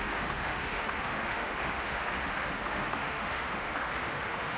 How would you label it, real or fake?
fake